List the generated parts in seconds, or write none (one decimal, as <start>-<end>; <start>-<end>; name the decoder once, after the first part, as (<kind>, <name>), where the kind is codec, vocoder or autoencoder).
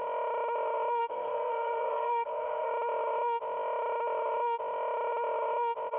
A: 1.0-2.7 (codec, SNAC)